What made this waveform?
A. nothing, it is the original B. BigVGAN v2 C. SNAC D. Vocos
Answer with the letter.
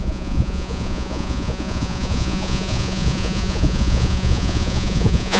D